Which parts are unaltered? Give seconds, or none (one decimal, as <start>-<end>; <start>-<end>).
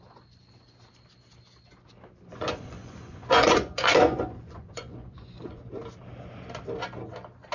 0.0-2.3; 5.6-7.5